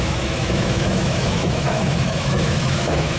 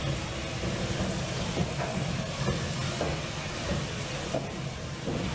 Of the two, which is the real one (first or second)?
second